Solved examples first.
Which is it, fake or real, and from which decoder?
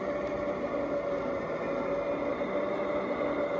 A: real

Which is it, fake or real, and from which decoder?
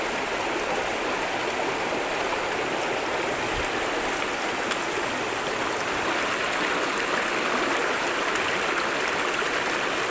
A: real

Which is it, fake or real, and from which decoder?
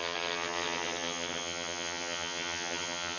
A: fake, vocoder, HiFi-GAN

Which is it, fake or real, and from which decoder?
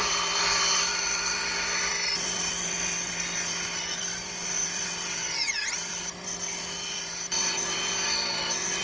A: fake, vocoder, BigVGAN v2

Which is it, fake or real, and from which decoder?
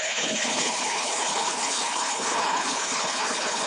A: fake, codec, HILCodec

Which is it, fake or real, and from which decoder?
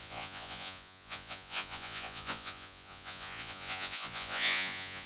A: fake, vocoder, Vocos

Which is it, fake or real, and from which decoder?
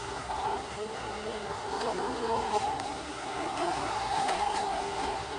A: fake, codec, SNAC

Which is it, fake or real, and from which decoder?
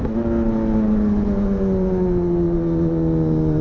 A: real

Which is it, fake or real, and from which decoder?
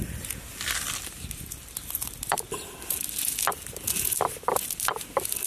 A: real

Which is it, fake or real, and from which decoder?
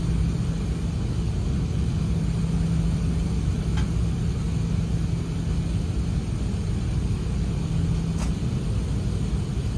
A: real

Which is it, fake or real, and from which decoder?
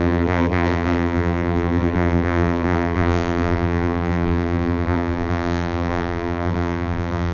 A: fake, vocoder, BigVGAN v2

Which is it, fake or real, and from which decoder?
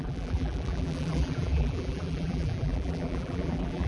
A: fake, vocoder, BigVGAN v2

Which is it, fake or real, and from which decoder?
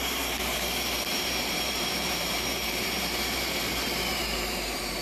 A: fake, vocoder, BigVGAN v2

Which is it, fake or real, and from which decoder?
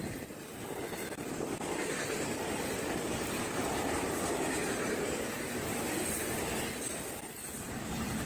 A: real